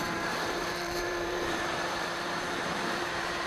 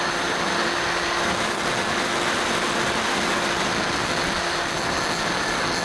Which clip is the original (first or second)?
second